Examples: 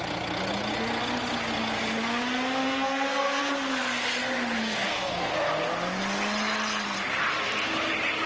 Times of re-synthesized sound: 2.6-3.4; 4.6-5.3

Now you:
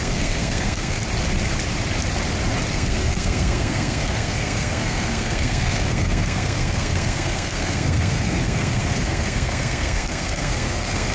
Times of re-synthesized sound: 0.0-1.0; 2.7-11.1

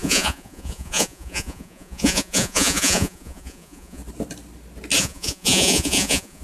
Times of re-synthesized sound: 0.0-4.0; 5.0-6.4